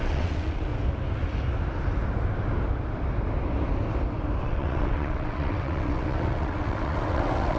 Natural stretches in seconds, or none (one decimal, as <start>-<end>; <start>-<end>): 0.7-4.4